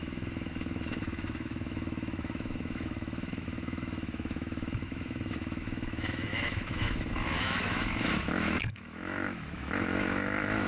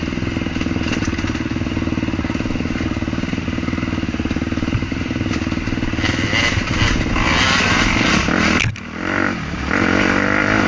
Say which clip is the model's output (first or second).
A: first